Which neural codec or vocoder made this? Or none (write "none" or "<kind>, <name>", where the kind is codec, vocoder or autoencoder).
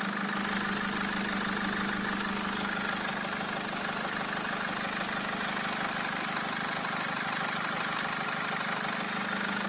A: none